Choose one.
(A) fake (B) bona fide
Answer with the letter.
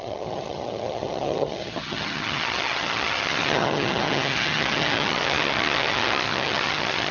A